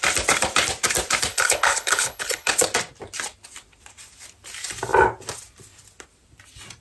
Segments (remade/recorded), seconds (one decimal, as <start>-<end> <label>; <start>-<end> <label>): 0.0-1.3 recorded; 1.3-2.5 remade; 2.5-6.8 recorded